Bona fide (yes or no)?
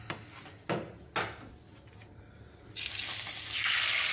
yes